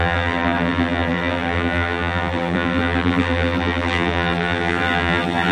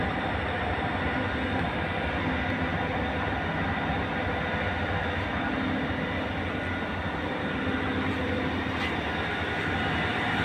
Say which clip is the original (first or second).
second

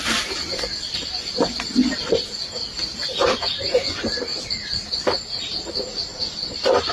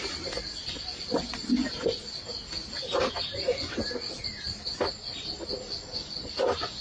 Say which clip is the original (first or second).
second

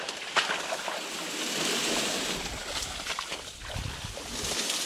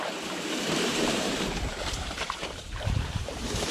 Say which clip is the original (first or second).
first